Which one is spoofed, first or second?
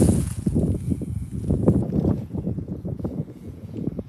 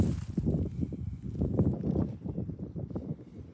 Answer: first